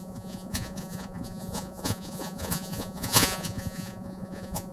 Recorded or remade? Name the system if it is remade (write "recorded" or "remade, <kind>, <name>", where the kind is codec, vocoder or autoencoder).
remade, vocoder, Vocos